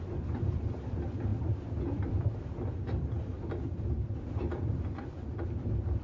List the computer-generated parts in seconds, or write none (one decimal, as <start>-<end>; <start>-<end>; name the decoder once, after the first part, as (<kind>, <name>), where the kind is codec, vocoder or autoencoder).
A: 1.3-2.2 (vocoder, BigVGAN v2); 3.3-6.0